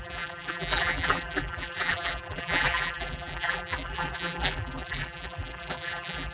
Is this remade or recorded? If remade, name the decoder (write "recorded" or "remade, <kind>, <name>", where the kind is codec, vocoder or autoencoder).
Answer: remade, vocoder, BigVGAN v2